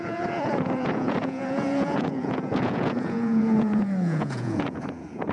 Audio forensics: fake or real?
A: fake